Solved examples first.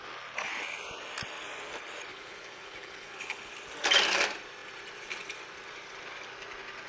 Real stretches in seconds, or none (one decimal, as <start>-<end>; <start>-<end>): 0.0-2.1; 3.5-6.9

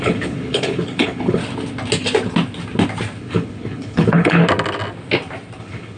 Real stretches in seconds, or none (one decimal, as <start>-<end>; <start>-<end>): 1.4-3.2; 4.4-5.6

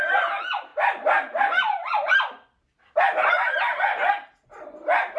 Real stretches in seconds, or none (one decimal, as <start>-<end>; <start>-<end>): 0.0-5.2

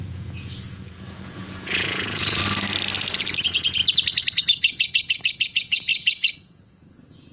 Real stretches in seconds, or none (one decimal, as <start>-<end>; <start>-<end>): 2.4-3.4; 3.8-4.4

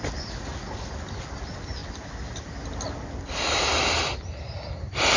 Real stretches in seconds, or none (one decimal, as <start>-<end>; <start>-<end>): 0.0-5.2

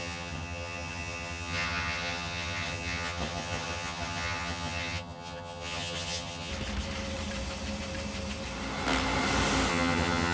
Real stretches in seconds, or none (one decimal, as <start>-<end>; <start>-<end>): 6.5-9.7

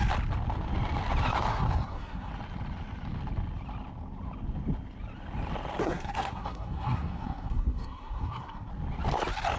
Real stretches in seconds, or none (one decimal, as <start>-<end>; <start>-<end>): 0.0-1.5; 2.3-5.8; 8.7-9.6